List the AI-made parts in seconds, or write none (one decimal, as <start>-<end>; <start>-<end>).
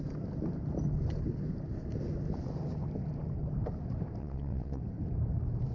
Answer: 4.2-4.8